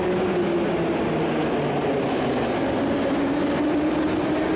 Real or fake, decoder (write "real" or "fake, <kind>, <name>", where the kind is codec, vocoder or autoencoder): real